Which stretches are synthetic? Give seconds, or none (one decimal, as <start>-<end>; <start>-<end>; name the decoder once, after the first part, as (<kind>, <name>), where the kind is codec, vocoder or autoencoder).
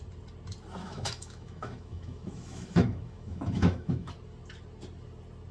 0.8-4.1 (autoencoder, DAC-VAE)